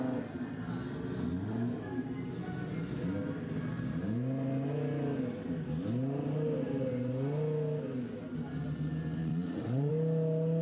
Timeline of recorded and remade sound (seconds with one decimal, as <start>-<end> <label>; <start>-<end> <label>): 0.0-9.2 recorded; 9.2-9.9 remade; 9.9-10.6 recorded